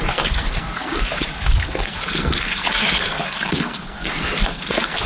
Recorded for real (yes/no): no